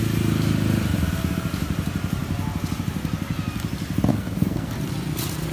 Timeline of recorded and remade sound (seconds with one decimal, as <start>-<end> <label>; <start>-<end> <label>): 0.0-4.1 recorded; 4.1-4.7 remade; 4.7-5.5 recorded